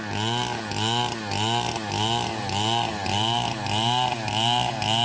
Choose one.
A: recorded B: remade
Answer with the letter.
A